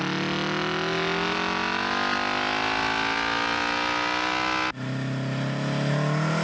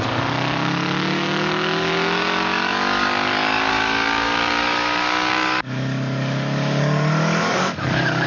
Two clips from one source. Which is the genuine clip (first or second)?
first